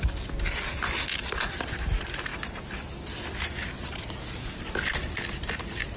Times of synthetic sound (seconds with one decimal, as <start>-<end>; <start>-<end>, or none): 1.2-1.9